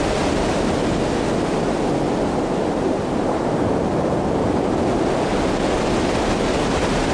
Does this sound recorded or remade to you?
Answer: recorded